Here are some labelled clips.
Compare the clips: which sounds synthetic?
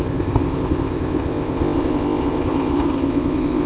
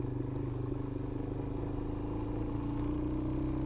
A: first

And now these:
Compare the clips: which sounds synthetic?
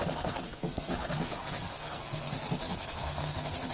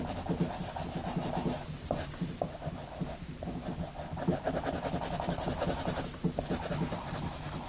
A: first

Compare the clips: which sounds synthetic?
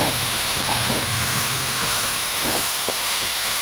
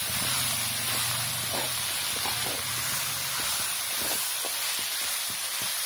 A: first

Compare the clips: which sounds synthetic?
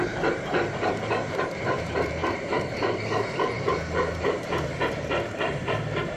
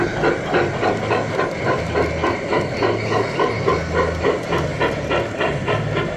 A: first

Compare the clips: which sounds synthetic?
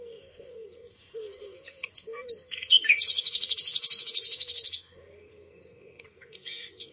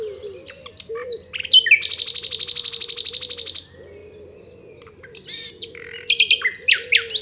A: first